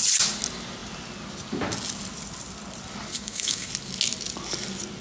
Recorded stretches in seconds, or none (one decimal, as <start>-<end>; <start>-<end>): 0.0-3.1; 3.7-5.0